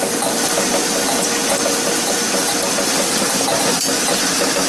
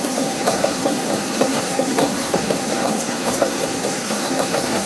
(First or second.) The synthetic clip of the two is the second